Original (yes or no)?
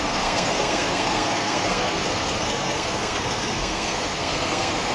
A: no